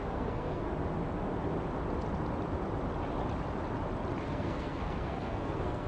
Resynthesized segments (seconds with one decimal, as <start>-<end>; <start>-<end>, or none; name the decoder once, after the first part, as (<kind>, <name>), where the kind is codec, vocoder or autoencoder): 0.0-0.7 (codec, SNAC); 4.2-5.9